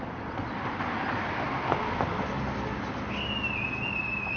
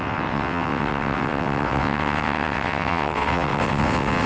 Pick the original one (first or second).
first